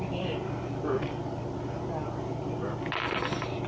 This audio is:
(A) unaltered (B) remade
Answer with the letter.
A